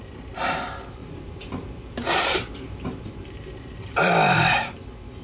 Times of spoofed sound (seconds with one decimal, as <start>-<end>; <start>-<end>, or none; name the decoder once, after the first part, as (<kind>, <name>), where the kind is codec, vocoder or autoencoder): 1.0-4.1 (vocoder, BigVGAN v2)